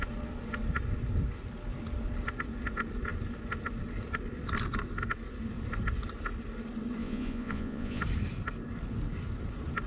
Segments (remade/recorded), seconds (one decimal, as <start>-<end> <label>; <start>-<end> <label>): 0.0-7.0 recorded; 7.0-8.0 remade; 8.0-9.9 recorded